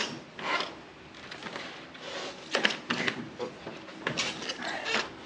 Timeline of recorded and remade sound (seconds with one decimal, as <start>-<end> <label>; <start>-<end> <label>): 0.0-5.3 recorded